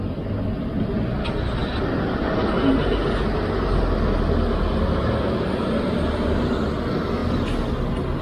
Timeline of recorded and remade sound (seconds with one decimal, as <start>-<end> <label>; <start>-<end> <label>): 0.0-8.2 recorded